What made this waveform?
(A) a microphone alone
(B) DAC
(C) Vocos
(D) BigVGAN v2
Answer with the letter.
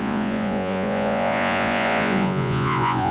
C